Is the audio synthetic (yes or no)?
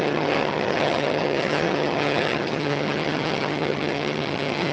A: yes